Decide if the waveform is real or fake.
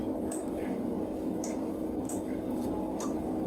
fake